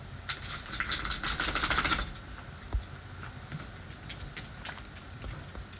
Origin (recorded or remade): recorded